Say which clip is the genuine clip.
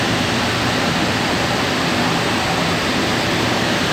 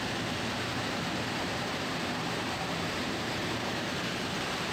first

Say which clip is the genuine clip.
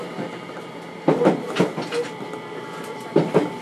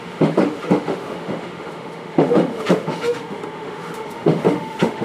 first